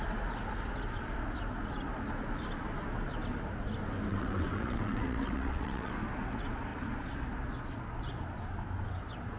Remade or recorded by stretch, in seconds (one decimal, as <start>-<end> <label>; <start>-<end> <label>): 0.0-4.1 recorded; 4.1-5.9 remade; 5.9-9.4 recorded